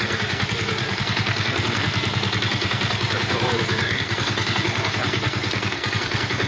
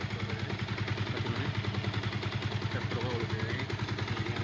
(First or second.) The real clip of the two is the second